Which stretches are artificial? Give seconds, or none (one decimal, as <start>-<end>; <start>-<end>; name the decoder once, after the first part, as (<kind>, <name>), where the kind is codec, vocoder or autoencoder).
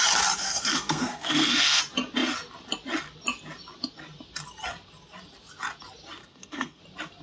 0.4-1.8 (codec, SNAC); 6.2-6.8